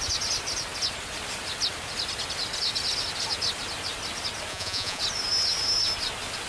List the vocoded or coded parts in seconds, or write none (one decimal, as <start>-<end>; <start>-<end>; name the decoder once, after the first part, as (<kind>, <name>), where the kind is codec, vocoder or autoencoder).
4.5-5.0 (vocoder, Vocos)